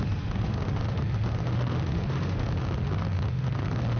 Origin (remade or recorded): remade